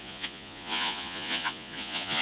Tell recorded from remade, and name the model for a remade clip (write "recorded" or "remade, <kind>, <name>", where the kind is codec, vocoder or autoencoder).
remade, vocoder, Vocos